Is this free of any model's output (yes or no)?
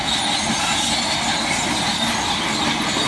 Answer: yes